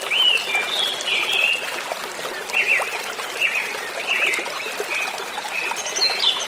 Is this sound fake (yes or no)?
no